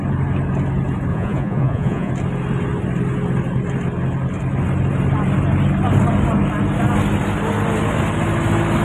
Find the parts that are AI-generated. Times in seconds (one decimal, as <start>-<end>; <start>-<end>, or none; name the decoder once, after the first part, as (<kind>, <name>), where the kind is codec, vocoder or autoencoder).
1.1-2.1 (vocoder, Vocos)